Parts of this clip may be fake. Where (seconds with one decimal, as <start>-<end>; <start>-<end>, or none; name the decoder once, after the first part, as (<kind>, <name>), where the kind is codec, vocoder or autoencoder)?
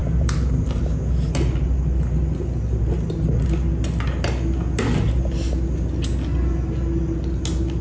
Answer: 0.0-0.8 (vocoder, BigVGAN v2)